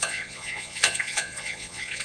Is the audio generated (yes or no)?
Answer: yes